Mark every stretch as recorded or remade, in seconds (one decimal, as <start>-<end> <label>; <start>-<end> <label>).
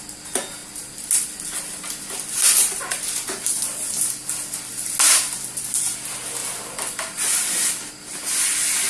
0.0-8.9 recorded